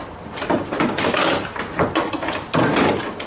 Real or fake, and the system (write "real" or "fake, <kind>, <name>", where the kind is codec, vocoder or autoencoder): real